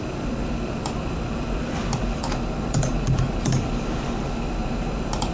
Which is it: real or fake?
fake